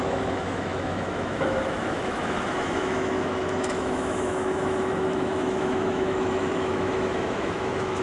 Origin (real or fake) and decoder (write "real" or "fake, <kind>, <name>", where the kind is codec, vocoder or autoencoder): fake, autoencoder, DAC-VAE